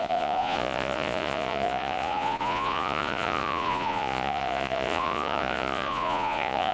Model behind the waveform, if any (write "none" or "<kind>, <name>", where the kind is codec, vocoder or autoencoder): vocoder, Vocos